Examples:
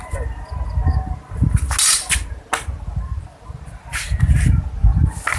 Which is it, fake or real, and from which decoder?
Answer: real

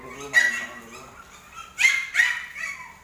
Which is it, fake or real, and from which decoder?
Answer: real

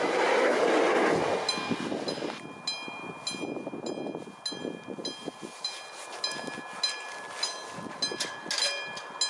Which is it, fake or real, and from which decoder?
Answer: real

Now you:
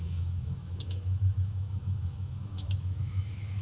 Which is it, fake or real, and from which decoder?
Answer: fake, autoencoder, DAC-VAE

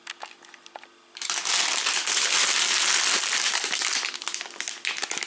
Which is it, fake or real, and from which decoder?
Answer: real